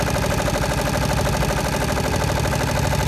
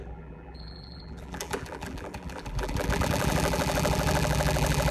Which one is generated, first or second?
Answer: second